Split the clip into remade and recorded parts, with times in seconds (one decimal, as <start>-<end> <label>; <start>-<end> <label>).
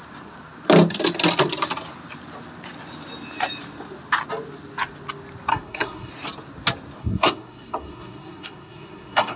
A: 0.0-5.5 recorded; 5.5-6.1 remade; 6.1-7.0 recorded; 7.0-9.4 remade